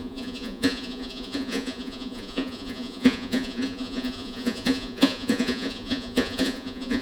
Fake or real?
fake